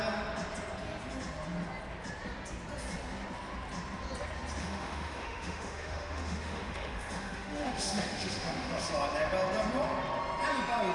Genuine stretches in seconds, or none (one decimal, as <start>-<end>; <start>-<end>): 0.0-4.6; 8.9-10.9